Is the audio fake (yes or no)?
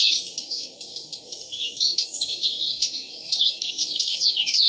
yes